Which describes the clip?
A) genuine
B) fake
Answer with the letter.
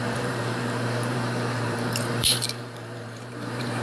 B